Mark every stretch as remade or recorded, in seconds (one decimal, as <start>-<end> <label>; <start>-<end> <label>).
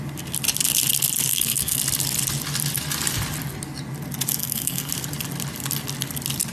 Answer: 0.0-1.3 recorded; 1.3-1.8 remade; 1.8-4.4 recorded; 4.4-4.9 remade; 4.9-6.5 recorded